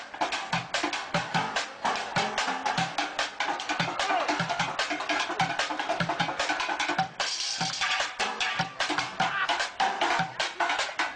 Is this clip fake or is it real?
real